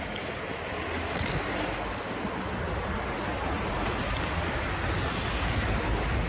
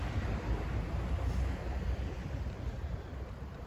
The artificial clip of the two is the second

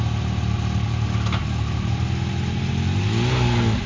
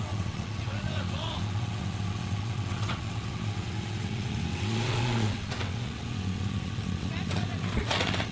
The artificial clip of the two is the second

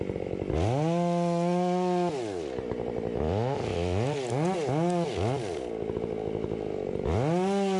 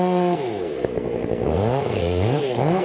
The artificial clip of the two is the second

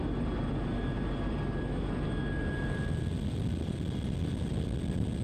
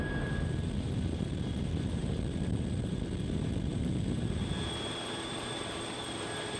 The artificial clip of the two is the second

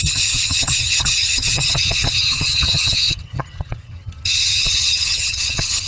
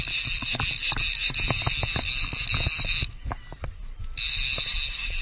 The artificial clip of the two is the first